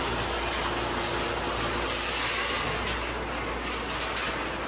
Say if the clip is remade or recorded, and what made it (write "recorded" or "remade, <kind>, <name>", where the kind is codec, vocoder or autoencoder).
recorded